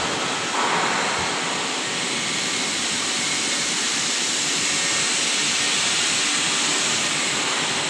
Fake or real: real